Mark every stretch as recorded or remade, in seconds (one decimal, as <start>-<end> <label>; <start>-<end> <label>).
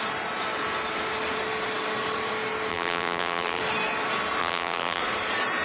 0.0-2.7 recorded; 2.7-3.6 remade; 3.6-4.4 recorded; 4.4-5.0 remade; 5.0-5.6 recorded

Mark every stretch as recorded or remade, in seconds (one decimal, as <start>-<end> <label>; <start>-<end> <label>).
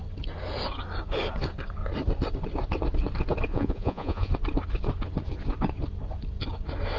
0.0-3.5 recorded; 3.5-4.3 remade; 4.3-7.0 recorded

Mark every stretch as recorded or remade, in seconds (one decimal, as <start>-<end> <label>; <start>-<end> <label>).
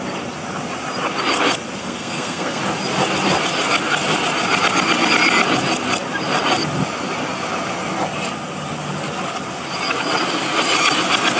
0.0-1.8 recorded; 1.8-2.6 remade; 2.6-11.4 recorded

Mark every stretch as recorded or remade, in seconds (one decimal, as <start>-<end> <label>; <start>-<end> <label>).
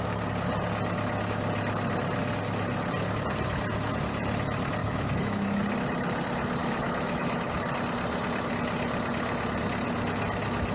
0.0-4.8 recorded; 4.8-5.6 remade; 5.6-6.6 recorded; 6.6-7.5 remade; 7.5-10.7 recorded